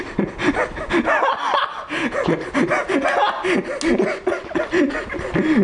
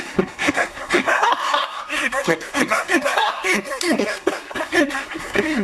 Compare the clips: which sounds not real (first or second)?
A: second